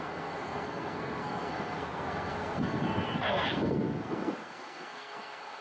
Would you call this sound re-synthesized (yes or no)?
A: yes